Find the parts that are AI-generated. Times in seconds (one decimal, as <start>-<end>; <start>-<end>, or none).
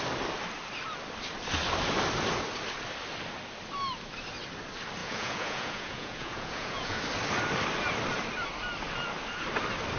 5.0-7.0